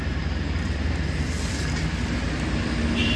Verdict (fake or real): fake